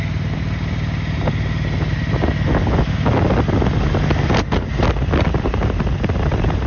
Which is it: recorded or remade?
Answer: recorded